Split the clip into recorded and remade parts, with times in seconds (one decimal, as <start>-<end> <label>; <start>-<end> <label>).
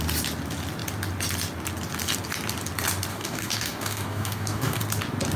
0.0-3.1 recorded; 3.1-4.8 remade; 4.8-5.4 recorded